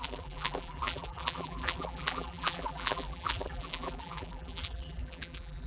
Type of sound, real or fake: fake